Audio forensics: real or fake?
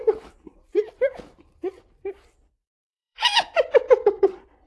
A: fake